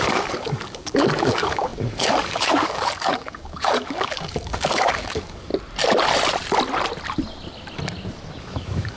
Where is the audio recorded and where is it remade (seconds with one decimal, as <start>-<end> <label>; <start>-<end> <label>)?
0.0-5.5 remade; 5.5-8.4 recorded; 8.4-9.0 remade